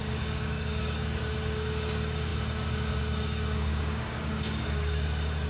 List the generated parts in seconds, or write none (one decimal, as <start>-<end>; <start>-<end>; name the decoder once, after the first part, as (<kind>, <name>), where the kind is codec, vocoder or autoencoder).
0.0-5.5 (codec, DAC)